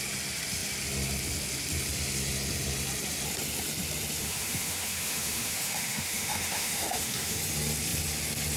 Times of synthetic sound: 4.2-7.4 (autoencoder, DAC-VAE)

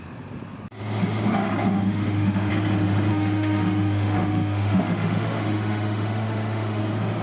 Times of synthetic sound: 1.4-2.5 (autoencoder, DAC-VAE); 3.1-6.8

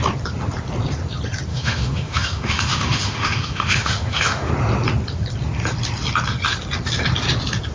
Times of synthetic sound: 1.5-4.5 (autoencoder, DAC-VAE)

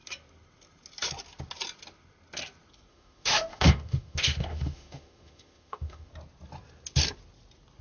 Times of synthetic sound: 2.9-6.1 (autoencoder, DAC-VAE)

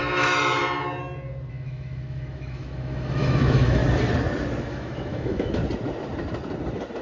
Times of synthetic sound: 0.0-0.6 (autoencoder, DAC-VAE); 1.5-3.8; 4.6-5.6